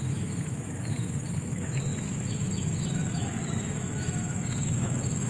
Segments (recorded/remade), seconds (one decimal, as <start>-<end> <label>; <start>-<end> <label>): 0.0-5.3 remade